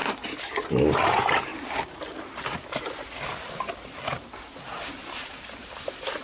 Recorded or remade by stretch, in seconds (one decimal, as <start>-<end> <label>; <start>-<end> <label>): 0.0-1.5 remade; 1.5-3.5 recorded; 3.5-4.1 remade; 4.1-5.0 recorded; 5.0-6.2 remade